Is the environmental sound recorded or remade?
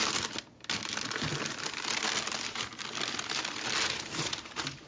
recorded